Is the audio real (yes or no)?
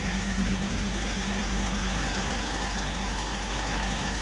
no